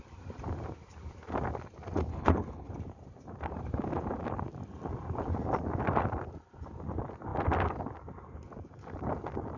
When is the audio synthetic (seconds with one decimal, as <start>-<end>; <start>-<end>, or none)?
2.1-2.7